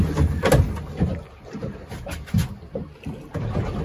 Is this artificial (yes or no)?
no